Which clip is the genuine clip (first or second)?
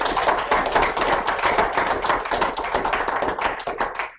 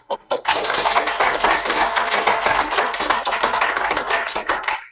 first